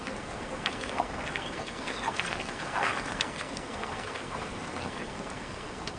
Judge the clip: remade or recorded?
remade